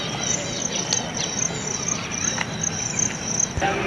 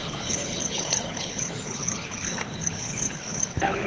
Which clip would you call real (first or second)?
first